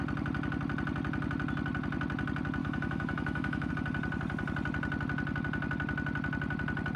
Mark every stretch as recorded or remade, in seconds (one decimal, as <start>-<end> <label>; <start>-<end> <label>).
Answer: 0.0-2.6 recorded; 2.6-3.7 remade; 3.7-7.0 recorded